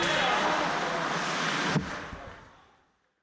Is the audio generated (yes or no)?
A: no